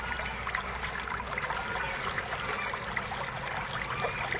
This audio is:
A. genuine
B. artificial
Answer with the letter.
A